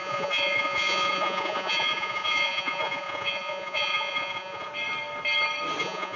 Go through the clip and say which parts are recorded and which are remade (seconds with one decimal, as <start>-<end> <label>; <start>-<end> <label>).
0.0-4.7 remade; 4.7-5.8 recorded; 5.8-6.2 remade